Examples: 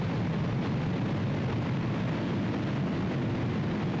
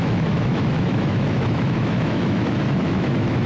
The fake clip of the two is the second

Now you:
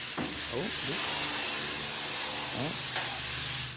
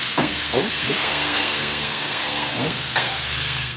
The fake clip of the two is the second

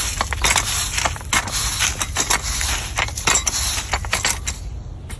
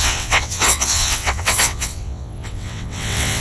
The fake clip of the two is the second